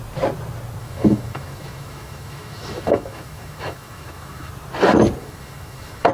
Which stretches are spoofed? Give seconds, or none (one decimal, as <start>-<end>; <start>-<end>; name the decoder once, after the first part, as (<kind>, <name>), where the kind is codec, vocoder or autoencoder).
0.8-4.5 (autoencoder, DAC-VAE); 5.2-6.1